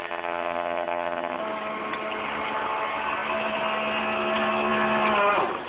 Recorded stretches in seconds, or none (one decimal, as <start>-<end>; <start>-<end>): 1.4-5.7